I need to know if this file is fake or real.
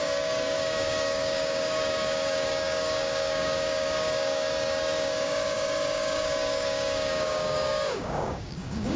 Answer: fake